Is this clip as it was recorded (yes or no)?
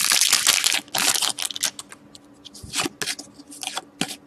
yes